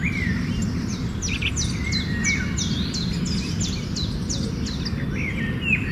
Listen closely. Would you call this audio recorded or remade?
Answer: recorded